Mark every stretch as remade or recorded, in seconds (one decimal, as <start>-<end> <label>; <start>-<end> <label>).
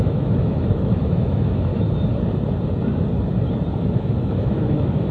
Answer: 0.0-1.7 remade; 1.7-3.9 recorded; 3.9-5.1 remade